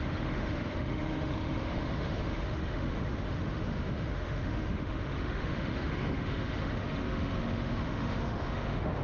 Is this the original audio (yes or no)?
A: no